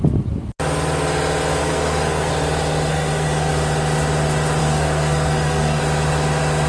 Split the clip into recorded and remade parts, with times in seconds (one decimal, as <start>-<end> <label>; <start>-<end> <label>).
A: 0.0-1.6 recorded; 1.6-2.3 remade; 2.3-2.9 recorded; 2.9-3.5 remade; 3.5-4.6 recorded; 4.6-5.8 remade; 5.8-6.7 recorded